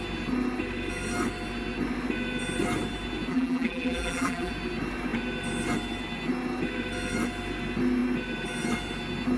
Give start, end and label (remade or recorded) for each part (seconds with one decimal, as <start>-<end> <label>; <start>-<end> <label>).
0.0-3.3 recorded; 3.3-4.5 remade; 4.5-9.4 recorded